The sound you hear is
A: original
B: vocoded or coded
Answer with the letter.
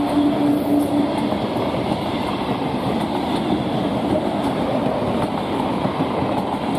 A